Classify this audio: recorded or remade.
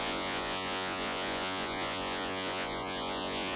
remade